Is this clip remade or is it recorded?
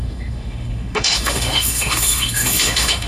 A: remade